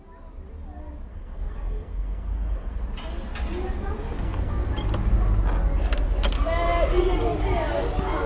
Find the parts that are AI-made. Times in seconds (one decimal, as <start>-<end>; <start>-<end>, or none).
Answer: 1.1-2.8; 4.2-4.7